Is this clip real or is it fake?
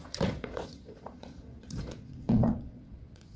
fake